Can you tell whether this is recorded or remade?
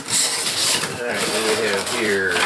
remade